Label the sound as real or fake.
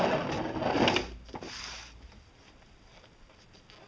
real